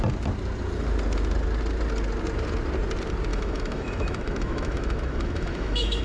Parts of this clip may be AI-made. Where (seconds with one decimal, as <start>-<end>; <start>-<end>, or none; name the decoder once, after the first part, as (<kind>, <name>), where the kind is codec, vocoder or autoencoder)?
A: 3.3-6.0 (autoencoder, DAC-VAE)